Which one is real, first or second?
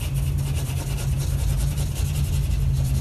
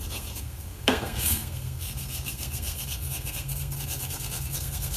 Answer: first